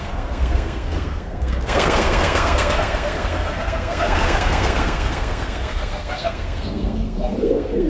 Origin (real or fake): fake